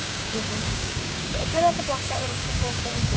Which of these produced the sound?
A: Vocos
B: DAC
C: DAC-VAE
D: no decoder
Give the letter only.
B